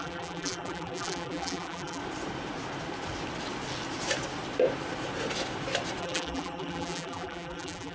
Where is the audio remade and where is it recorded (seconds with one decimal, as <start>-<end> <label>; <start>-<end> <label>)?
0.0-2.0 remade; 2.0-6.0 recorded; 6.0-7.9 remade